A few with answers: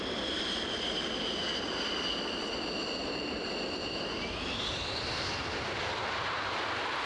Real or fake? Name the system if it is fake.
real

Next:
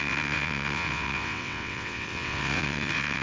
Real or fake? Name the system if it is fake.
fake, vocoder, WaveNeXt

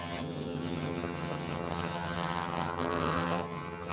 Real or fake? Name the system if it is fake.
fake, vocoder, HiFi-GAN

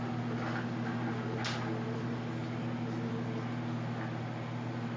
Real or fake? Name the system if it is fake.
real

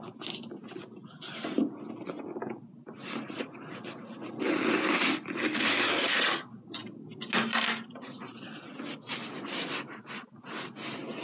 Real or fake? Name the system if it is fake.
real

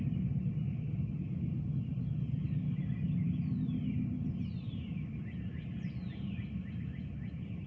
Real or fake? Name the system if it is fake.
real